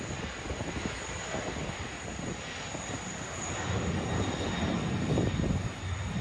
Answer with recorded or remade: recorded